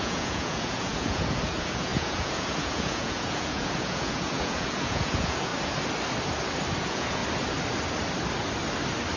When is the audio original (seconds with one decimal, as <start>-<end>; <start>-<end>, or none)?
5.5-6.8; 7.2-9.2

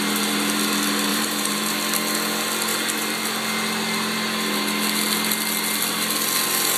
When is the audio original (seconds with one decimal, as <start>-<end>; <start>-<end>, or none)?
0.0-1.1; 1.7-6.8

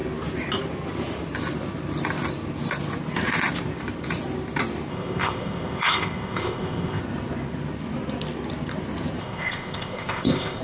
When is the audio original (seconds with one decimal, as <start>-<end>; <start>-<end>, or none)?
0.0-4.9; 7.0-9.2

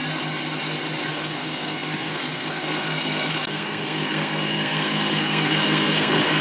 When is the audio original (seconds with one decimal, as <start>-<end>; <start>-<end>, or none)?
0.0-1.1

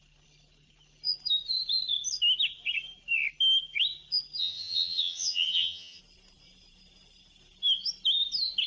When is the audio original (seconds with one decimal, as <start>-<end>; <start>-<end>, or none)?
0.0-4.4; 6.0-8.7

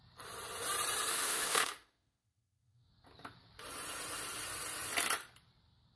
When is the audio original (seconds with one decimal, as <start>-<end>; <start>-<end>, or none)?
0.0-1.1; 2.9-6.0

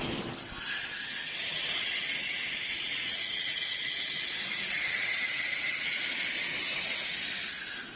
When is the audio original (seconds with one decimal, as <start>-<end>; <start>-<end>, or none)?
0.0-1.5; 6.0-6.5; 7.6-8.0